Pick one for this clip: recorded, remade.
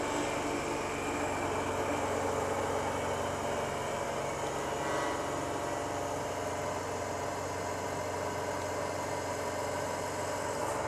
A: recorded